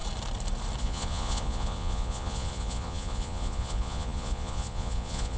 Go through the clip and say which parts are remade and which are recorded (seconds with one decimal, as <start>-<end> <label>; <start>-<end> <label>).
0.0-0.8 recorded; 0.8-5.4 remade